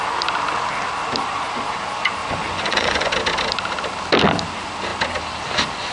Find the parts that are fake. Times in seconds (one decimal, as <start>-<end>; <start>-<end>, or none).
2.2-3.1